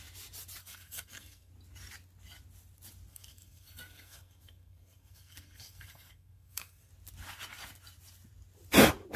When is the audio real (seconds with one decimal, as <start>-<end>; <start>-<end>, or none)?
0.0-0.6; 1.5-3.1; 6.9-9.2